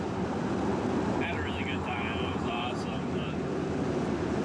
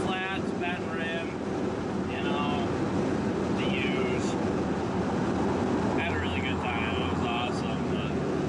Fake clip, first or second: first